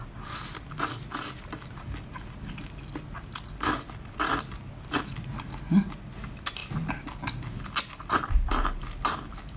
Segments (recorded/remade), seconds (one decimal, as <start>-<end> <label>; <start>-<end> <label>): 0.0-9.6 recorded